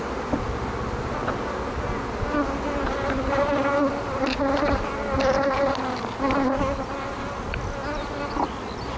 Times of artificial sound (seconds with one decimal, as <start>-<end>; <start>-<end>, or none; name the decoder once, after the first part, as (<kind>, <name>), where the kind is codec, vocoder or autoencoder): none